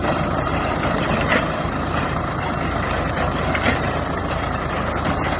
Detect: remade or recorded remade